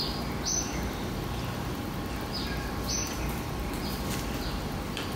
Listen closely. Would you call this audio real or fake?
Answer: real